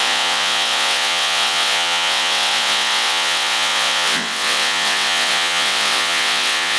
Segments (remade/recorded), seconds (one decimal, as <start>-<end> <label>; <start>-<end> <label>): 0.0-6.8 remade